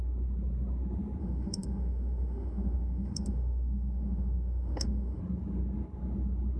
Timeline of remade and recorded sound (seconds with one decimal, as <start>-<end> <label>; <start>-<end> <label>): 0.0-1.2 recorded; 1.2-5.2 remade; 5.2-6.6 recorded